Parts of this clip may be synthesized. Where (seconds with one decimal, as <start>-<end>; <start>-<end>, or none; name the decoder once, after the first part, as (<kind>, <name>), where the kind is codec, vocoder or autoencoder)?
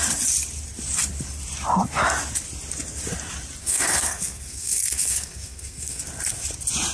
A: 3.6-6.0 (codec, SNAC)